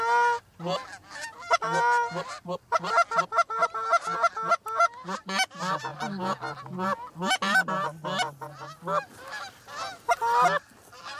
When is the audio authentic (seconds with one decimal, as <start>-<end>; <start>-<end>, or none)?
0.0-11.2